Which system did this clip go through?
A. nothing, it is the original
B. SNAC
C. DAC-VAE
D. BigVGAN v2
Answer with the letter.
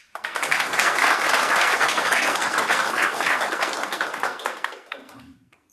B